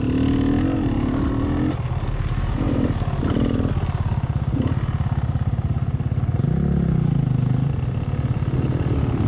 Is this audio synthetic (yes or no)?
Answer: no